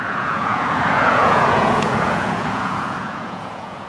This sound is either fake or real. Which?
fake